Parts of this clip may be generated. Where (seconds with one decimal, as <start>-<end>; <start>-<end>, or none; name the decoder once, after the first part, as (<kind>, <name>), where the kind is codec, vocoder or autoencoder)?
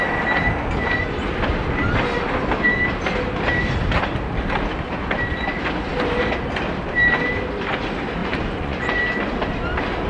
8.2-9.0 (vocoder, Vocos)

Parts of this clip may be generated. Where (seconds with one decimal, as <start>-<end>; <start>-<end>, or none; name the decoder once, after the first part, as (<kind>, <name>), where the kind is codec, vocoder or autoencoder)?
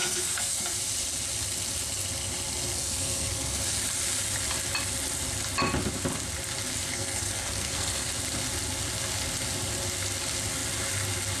0.0-0.8 (codec, SNAC); 2.7-3.6; 6.8-8.1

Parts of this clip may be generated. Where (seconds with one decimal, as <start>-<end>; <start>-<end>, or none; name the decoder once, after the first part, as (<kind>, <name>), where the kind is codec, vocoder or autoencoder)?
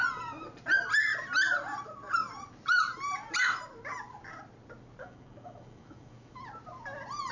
5.0-6.4 (autoencoder, DAC-VAE)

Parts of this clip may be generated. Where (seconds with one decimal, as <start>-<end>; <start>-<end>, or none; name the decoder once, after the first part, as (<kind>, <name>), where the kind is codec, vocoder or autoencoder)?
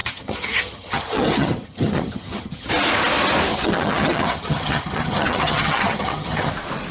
0.0-2.7 (vocoder, HiFi-GAN); 3.5-6.5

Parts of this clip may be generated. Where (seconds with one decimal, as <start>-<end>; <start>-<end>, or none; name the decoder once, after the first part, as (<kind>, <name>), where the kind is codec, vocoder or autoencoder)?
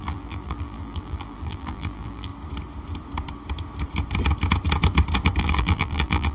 0.0-2.3 (vocoder, BigVGAN v2); 5.4-6.3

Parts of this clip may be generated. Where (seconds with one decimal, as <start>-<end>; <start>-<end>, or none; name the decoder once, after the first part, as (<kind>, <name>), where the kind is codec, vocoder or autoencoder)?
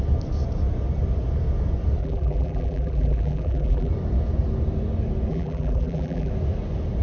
2.0-3.9 (vocoder, BigVGAN v2); 5.3-6.3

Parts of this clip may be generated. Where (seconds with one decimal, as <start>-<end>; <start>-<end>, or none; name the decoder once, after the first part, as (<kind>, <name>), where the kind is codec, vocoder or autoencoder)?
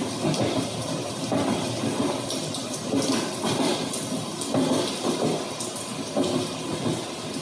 0.0-4.3 (vocoder, BigVGAN v2); 5.5-5.9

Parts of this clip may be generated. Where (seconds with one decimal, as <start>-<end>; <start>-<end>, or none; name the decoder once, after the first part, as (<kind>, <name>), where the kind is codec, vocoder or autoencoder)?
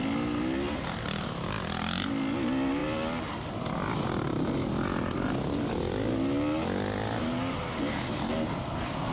none